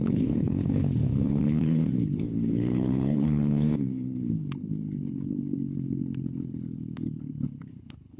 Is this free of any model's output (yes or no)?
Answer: no